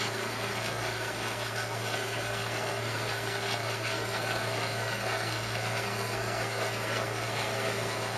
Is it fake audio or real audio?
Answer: fake